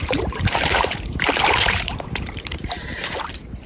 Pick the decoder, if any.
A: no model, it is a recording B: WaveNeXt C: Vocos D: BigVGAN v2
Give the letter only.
D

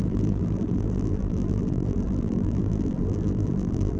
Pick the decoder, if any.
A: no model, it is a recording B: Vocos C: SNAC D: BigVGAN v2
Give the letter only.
D